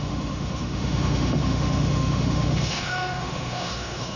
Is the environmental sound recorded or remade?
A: remade